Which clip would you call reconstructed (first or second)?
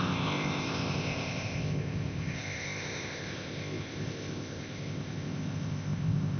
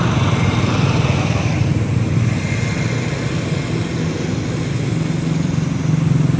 first